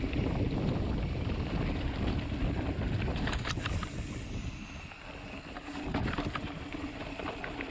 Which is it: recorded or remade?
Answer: recorded